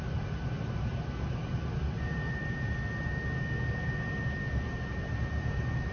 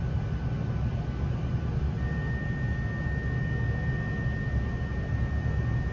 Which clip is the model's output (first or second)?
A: first